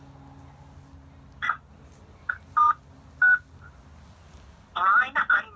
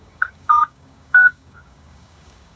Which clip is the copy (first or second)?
second